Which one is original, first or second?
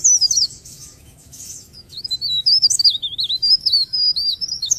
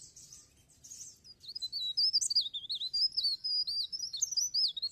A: second